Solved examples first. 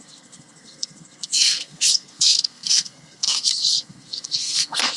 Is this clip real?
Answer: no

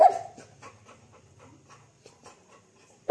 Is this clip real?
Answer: yes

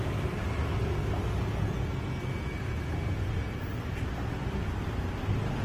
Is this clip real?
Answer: yes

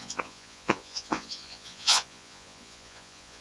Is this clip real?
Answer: no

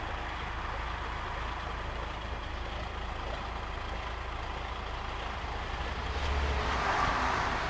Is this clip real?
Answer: yes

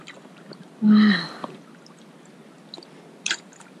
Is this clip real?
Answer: yes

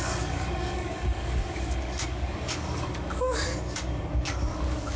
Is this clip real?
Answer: no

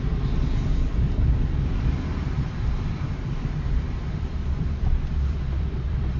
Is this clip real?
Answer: no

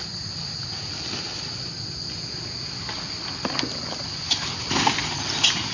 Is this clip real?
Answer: yes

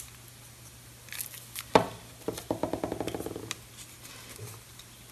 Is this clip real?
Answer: yes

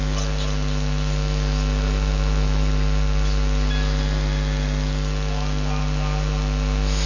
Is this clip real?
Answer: yes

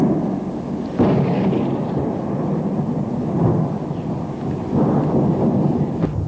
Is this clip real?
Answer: yes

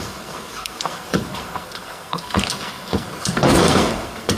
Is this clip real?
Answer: no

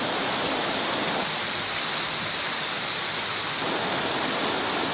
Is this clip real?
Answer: yes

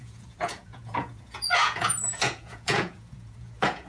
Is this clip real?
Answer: no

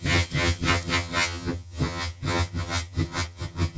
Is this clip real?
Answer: no